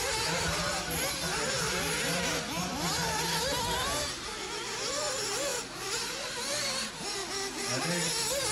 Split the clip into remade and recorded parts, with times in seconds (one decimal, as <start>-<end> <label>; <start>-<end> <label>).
0.0-8.5 recorded